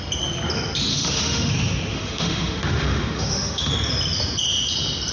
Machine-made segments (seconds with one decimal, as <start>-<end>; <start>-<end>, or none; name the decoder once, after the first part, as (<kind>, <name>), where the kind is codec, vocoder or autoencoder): 0.9-1.5 (autoencoder, DAC-VAE); 1.9-3.7